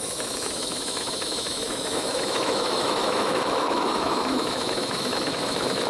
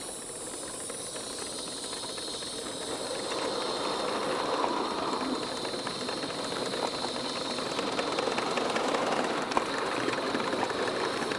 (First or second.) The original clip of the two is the second